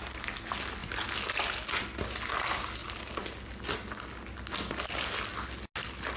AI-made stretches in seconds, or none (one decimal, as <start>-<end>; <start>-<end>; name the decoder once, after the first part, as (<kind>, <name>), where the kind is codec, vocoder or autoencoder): none